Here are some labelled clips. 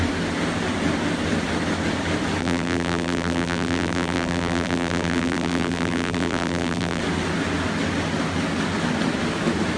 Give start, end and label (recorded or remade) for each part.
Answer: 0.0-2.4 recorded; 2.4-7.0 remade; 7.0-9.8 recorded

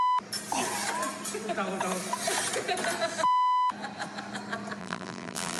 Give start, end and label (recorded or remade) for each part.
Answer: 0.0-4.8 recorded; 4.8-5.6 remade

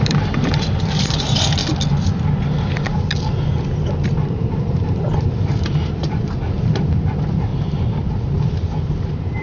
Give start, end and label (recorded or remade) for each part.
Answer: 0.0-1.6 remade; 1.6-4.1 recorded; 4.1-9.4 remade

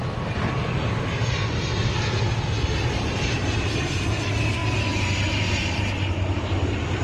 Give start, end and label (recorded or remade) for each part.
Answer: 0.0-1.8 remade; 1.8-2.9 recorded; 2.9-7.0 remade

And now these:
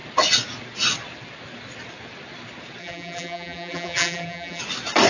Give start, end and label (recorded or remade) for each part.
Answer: 0.0-2.8 recorded; 2.8-4.6 remade; 4.6-5.1 recorded

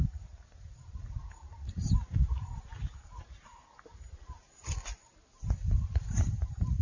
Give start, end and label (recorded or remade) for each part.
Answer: 0.0-1.8 remade; 1.8-2.8 recorded; 2.8-3.5 remade; 3.5-5.3 recorded; 5.3-6.8 remade